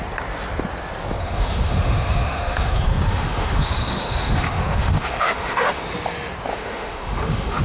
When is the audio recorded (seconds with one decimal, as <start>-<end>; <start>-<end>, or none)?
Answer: 0.0-1.2; 5.8-6.5